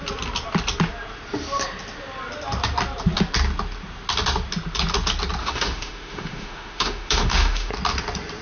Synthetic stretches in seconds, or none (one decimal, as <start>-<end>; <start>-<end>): 5.4-7.7